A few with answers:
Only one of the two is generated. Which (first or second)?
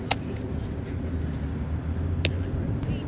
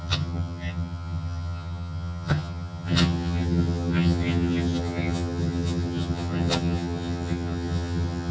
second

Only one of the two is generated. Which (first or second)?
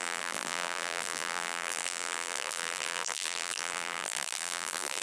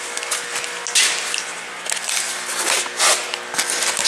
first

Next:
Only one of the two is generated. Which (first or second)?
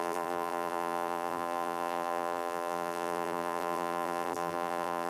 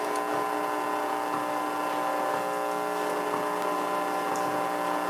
first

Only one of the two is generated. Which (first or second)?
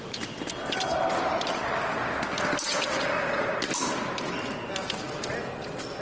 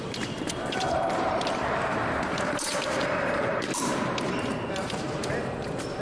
second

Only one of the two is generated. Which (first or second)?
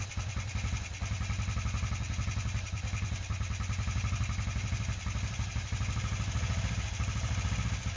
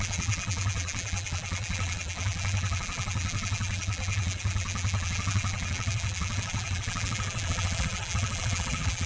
second